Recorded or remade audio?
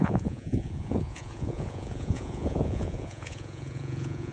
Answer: remade